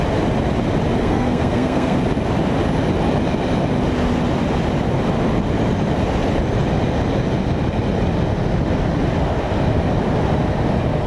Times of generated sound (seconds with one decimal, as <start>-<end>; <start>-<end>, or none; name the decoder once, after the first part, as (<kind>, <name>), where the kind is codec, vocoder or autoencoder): 1.0-2.0 (codec, SNAC)